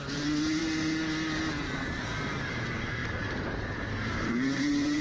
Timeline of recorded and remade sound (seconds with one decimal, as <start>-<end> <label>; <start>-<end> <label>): 0.0-0.6 remade; 0.6-1.5 recorded; 1.5-5.0 remade

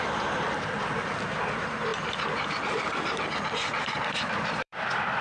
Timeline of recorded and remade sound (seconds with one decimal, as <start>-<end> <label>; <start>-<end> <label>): 0.0-1.9 recorded; 1.9-5.2 remade

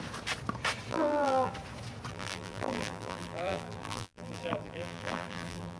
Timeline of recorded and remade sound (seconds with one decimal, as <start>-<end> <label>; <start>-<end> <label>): 0.0-0.9 recorded; 0.9-1.5 remade; 1.5-2.1 recorded; 2.1-5.8 remade

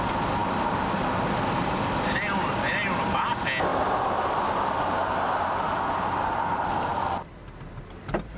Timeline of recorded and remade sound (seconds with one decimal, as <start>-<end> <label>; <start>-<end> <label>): 0.0-8.4 recorded

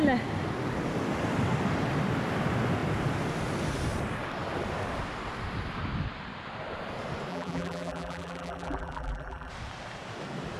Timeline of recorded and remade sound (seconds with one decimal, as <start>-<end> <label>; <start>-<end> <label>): 0.0-7.3 recorded; 7.3-9.5 remade; 9.5-10.6 recorded